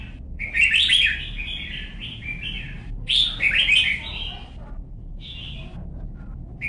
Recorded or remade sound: recorded